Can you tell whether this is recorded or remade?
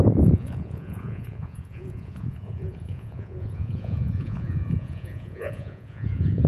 remade